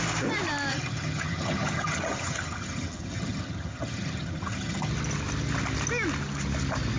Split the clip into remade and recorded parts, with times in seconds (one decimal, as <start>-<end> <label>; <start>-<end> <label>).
0.0-0.7 recorded; 0.7-4.9 remade; 4.9-7.0 recorded